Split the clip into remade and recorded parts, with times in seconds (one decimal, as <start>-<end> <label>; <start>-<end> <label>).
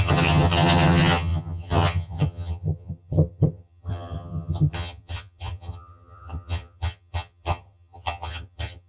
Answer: 0.0-8.9 remade